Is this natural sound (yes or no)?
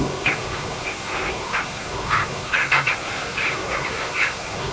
no